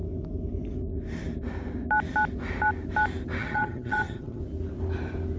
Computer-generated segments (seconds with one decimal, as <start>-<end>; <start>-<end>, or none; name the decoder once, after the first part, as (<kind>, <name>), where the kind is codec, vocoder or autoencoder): 3.4-4.4 (vocoder, HiFi-GAN)